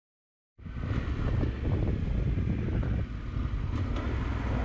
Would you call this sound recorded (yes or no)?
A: yes